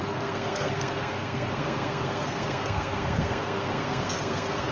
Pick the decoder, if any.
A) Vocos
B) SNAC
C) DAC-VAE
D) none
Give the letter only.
B